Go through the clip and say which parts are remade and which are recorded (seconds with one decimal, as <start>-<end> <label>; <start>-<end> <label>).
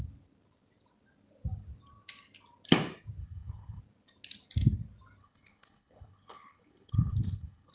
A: 0.0-3.2 recorded; 3.2-3.8 remade; 3.8-5.2 recorded; 5.2-7.7 remade